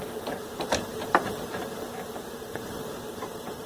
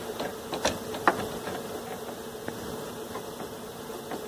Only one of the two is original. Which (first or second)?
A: second